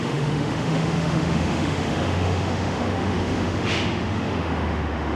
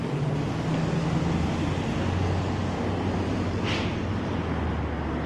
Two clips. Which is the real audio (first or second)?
second